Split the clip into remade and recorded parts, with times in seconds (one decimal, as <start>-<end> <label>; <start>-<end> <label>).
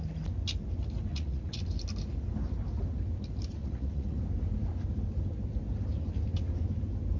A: 0.0-1.1 recorded; 1.1-1.6 remade; 1.6-3.6 recorded; 3.6-4.2 remade; 4.2-7.2 recorded